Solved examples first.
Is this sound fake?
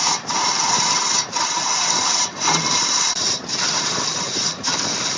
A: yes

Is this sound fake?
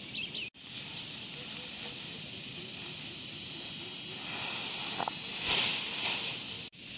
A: no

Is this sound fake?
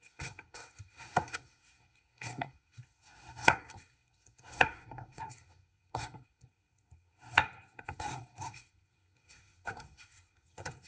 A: yes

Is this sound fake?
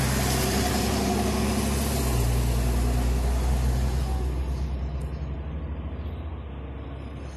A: no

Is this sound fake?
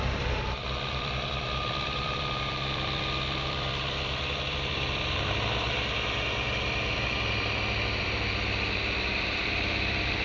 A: yes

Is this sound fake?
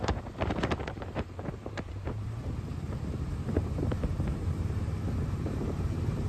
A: yes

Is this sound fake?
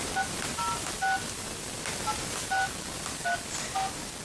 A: no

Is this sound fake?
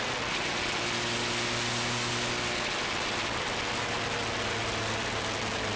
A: no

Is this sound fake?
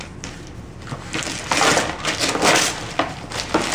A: no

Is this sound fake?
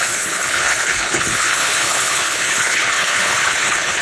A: yes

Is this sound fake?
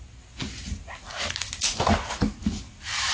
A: no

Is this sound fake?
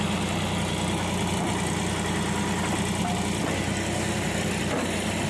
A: no